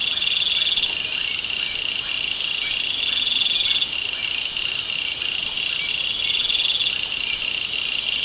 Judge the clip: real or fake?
real